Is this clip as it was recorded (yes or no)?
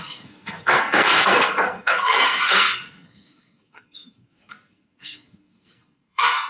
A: no